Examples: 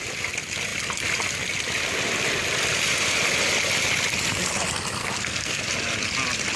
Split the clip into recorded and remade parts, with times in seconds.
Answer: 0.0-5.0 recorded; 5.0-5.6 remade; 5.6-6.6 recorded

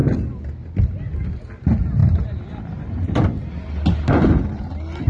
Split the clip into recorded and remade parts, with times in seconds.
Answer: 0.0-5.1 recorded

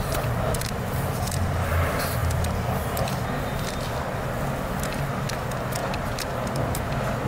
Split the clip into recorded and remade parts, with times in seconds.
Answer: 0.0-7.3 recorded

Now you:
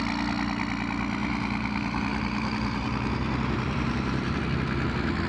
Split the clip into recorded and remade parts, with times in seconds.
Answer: 0.0-1.2 recorded; 1.2-4.4 remade; 4.4-5.3 recorded

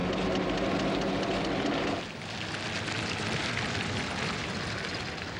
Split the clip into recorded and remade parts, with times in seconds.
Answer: 0.0-5.4 recorded

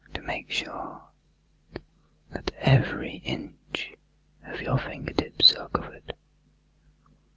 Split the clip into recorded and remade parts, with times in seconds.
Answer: 0.0-1.2 recorded; 1.2-3.5 remade; 3.5-4.9 recorded; 4.9-6.1 remade; 6.1-7.4 recorded

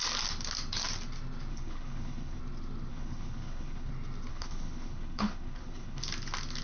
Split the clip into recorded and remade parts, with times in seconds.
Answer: 0.0-1.5 recorded; 1.5-2.4 remade; 2.4-2.9 recorded; 2.9-3.9 remade; 3.9-4.3 recorded; 4.3-6.0 remade; 6.0-6.6 recorded